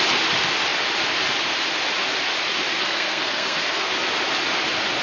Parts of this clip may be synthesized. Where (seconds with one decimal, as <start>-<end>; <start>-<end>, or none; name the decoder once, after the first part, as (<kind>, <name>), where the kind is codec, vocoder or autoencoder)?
2.8-3.9 (codec, SNAC)